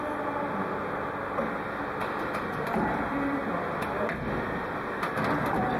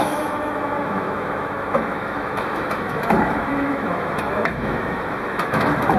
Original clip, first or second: first